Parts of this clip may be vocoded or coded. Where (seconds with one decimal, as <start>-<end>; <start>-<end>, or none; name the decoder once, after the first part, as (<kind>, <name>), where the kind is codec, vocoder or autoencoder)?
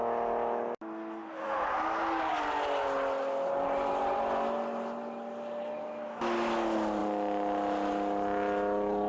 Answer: none